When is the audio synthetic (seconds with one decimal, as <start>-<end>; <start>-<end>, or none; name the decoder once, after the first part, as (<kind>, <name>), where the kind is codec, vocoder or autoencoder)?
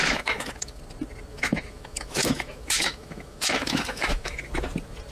0.0-0.8 (autoencoder, DAC-VAE); 1.3-4.4